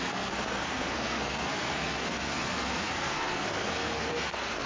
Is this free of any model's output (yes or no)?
no